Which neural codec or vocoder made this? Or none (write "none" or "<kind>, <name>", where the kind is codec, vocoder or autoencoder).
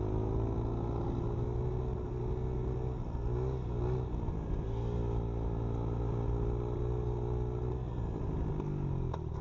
none